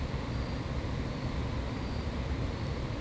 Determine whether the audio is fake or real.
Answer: real